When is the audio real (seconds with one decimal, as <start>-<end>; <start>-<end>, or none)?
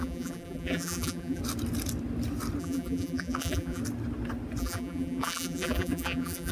1.4-2.6; 3.8-4.6